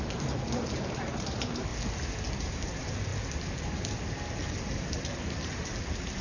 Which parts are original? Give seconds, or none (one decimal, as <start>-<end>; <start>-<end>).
1.7-2.3; 3.1-4.3